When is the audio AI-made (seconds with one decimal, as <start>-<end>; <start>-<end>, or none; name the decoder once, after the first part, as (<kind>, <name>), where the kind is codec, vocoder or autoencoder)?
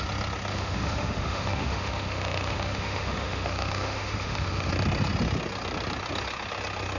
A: 0.5-4.7 (autoencoder, DAC-VAE)